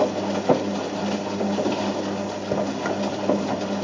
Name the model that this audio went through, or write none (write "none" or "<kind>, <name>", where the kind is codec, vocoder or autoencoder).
none